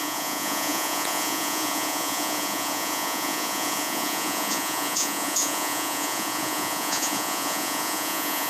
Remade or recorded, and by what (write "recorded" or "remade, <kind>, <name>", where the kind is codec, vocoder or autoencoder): remade, vocoder, Vocos